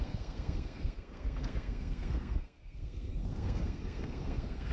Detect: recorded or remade remade